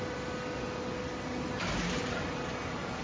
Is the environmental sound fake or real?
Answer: real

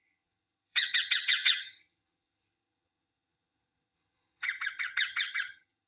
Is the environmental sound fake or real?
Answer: fake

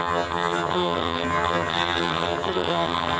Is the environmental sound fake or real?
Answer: fake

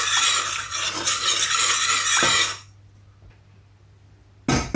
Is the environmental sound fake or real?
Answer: real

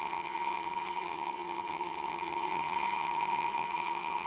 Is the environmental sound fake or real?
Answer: fake